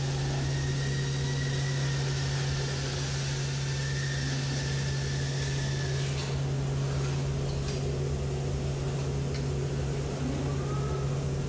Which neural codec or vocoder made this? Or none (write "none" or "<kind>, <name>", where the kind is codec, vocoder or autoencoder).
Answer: none